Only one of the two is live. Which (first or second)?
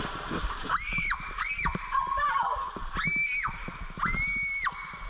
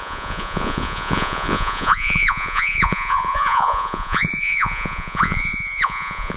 first